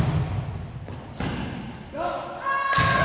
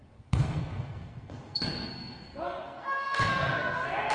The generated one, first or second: second